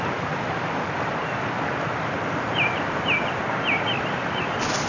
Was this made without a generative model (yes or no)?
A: yes